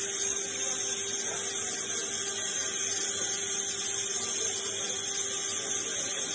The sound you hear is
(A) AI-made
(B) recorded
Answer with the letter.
B